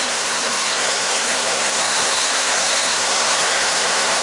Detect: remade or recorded remade